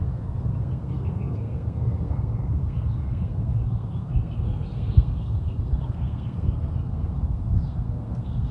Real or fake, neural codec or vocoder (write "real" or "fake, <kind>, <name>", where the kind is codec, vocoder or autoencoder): fake, codec, SNAC